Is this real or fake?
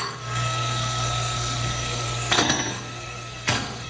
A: fake